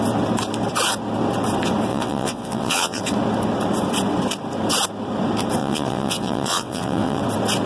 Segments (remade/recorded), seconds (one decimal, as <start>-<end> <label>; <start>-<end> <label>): 0.0-1.9 recorded; 1.9-3.0 remade; 3.0-5.6 recorded; 5.6-7.2 remade; 7.2-7.7 recorded